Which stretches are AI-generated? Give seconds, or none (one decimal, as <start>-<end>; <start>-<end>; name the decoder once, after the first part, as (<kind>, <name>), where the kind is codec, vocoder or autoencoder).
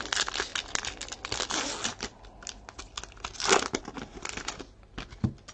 none